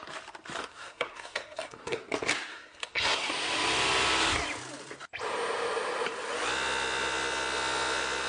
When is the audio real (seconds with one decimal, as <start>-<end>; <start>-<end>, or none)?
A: 0.0-0.6; 2.0-2.5; 3.3-8.3

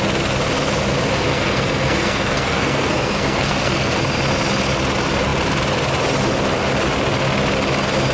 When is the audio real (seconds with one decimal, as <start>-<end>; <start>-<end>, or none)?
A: 0.0-1.3; 4.0-8.1

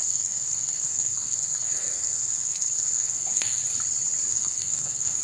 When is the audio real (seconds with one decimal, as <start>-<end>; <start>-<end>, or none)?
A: 3.6-4.3

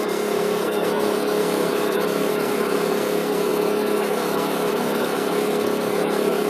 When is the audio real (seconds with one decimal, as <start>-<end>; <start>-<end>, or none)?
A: none